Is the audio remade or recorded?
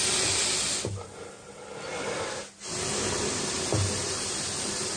recorded